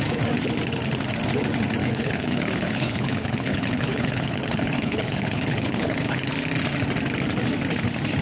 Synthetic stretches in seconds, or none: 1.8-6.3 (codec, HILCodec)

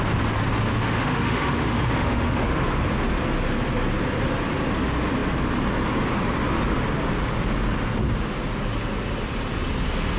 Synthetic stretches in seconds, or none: 0.7-2.6 (autoencoder, DAC-VAE)

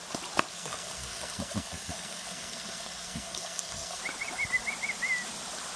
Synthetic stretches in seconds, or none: 0.5-4.0 (codec, SNAC)

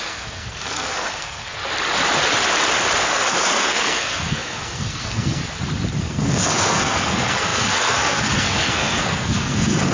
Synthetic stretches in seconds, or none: 0.0-1.6 (codec, SNAC); 3.0-5.4; 6.0-9.9